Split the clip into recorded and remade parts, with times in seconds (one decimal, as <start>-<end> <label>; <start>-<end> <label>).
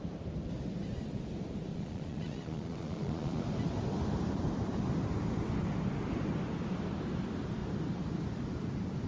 0.0-1.7 recorded; 1.7-3.4 remade; 3.4-9.1 recorded